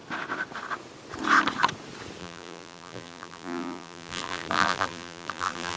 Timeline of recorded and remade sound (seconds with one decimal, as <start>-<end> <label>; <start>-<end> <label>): 0.0-2.2 recorded; 2.2-5.8 remade